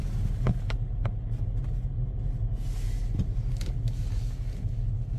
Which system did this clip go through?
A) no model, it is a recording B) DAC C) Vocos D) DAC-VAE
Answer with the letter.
A